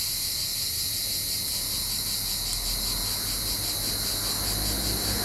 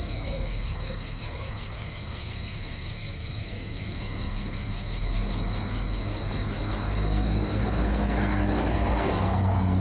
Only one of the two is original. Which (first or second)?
first